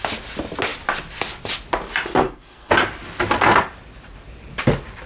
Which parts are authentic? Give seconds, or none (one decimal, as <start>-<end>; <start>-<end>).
0.0-2.2; 2.7-5.1